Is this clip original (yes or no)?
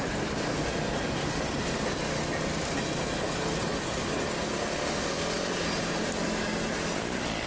yes